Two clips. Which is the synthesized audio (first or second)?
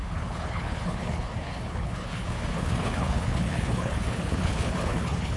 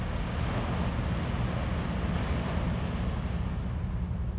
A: first